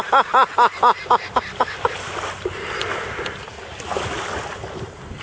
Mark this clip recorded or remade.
recorded